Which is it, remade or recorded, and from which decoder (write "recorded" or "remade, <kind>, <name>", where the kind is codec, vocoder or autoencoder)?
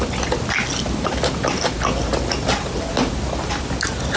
recorded